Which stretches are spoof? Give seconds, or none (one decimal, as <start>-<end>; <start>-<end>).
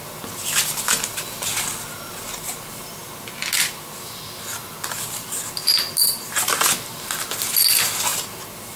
6.0-6.6